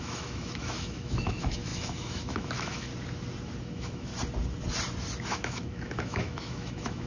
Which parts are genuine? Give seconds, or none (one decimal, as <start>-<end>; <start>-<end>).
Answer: 2.9-3.6; 4.1-5.3